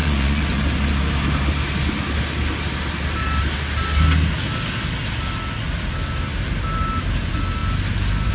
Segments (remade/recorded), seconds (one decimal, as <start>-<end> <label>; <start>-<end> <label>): 0.0-0.6 remade; 0.6-8.3 recorded